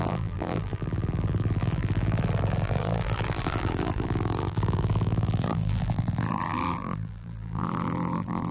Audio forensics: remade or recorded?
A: remade